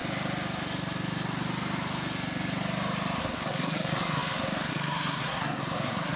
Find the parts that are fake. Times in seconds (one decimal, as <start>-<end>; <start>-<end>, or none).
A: 3.2-6.2